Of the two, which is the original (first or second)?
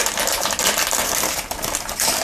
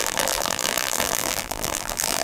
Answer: first